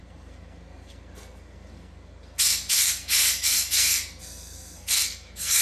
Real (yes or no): no